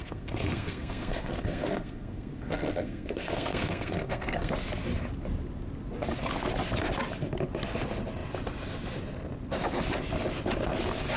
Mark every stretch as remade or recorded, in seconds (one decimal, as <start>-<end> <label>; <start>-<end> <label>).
0.0-4.5 remade; 4.5-11.2 recorded